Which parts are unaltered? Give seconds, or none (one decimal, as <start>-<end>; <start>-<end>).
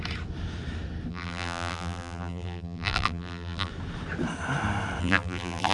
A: 0.0-1.1; 3.7-5.0